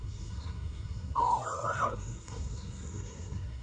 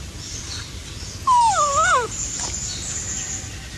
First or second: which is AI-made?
first